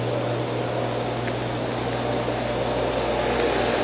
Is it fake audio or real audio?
real